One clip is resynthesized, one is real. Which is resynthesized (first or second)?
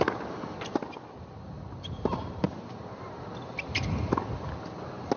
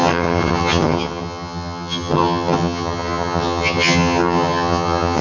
second